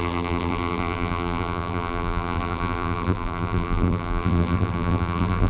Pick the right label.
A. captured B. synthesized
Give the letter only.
B